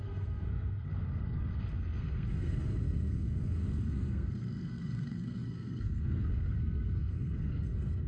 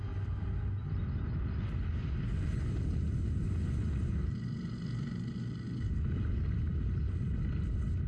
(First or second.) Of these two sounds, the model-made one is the first